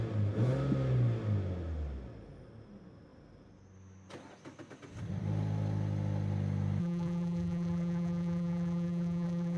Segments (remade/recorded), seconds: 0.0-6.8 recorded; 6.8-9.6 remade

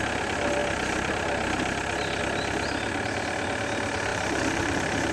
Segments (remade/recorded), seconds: 0.0-4.1 recorded; 4.1-5.1 remade

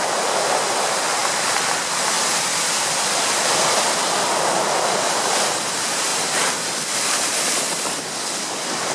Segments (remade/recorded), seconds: 0.0-1.2 recorded; 1.2-2.9 remade; 2.9-6.1 recorded; 6.1-7.6 remade; 7.6-8.9 recorded

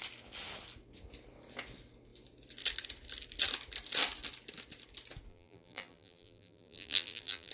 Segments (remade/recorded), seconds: 0.0-5.3 recorded; 5.3-7.5 remade

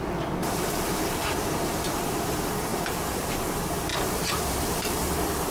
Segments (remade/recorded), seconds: 0.0-0.4 recorded; 0.4-2.0 remade; 2.0-2.7 recorded; 2.7-3.3 remade; 3.3-3.9 recorded; 3.9-5.1 remade; 5.1-5.5 recorded

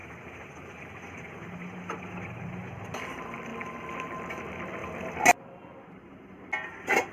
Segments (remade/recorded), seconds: 0.0-7.1 recorded